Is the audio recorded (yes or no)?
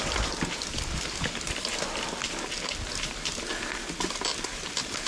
yes